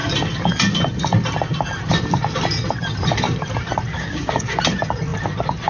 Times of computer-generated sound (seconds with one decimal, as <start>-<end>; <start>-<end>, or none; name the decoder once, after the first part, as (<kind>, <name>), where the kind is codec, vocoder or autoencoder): 3.9-4.6 (codec, DAC)